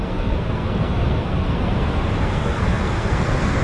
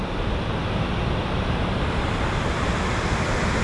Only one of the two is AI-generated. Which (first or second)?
first